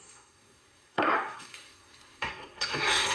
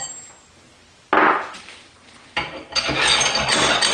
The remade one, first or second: first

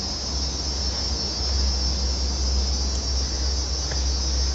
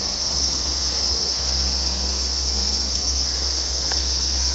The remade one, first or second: second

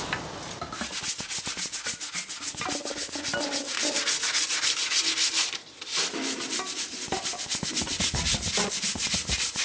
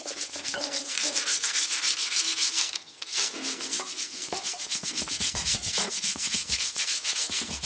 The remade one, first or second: second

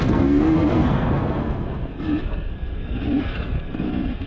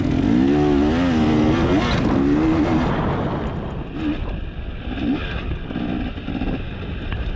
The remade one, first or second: first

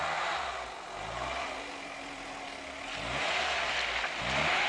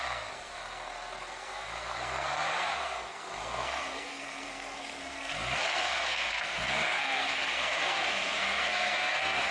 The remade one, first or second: second